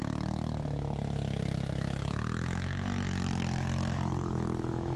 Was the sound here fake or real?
fake